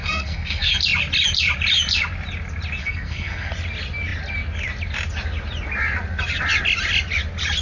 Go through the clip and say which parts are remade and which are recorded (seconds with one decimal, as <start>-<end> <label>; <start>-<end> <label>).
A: 0.0-0.8 remade; 0.8-2.8 recorded; 2.8-3.5 remade; 3.5-7.6 recorded